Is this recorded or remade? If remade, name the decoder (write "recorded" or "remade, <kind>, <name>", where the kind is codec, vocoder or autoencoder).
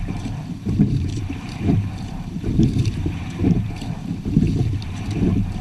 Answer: remade, vocoder, BigVGAN v2